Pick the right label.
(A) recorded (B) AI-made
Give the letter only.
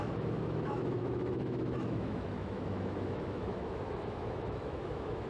B